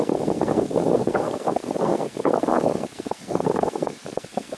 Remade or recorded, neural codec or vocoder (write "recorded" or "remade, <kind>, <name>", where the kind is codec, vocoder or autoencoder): remade, codec, SNAC